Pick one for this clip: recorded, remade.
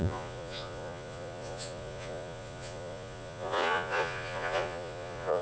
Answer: remade